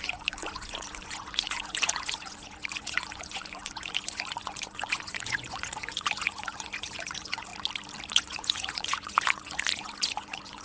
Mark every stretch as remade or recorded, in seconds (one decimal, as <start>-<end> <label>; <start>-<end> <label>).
0.0-7.5 remade; 7.5-8.1 recorded; 8.1-10.6 remade